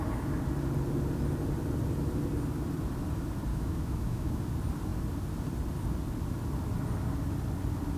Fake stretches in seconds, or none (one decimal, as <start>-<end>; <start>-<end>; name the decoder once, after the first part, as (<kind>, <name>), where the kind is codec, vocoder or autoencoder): 3.5-4.4 (autoencoder, DAC-VAE)